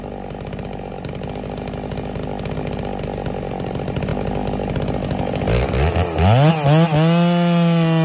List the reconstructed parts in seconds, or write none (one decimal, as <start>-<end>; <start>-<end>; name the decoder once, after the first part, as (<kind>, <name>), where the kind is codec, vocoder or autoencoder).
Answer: none